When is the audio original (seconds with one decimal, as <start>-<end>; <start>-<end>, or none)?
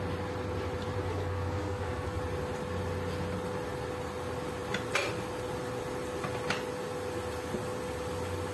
0.0-1.0; 2.2-8.5